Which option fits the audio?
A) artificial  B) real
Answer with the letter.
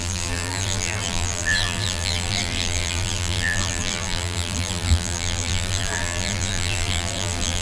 A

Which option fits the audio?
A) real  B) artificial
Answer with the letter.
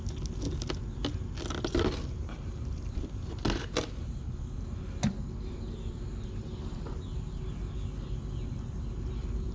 A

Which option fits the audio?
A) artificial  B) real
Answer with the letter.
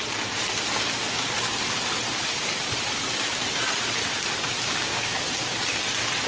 B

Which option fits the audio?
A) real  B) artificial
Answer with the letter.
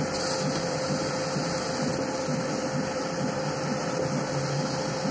A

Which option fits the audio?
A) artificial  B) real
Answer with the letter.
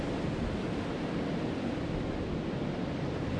B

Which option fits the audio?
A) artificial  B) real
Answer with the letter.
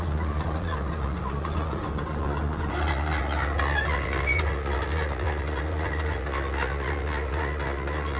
A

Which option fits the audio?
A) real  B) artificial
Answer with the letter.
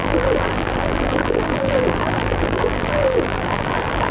B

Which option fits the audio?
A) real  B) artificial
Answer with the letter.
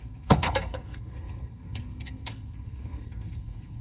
B